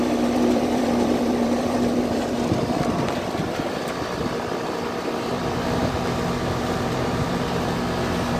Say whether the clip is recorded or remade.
remade